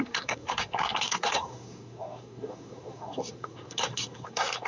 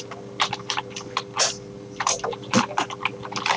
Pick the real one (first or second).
second